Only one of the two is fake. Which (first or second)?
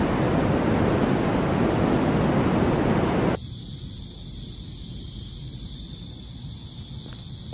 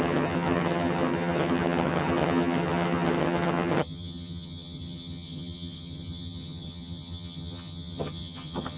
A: second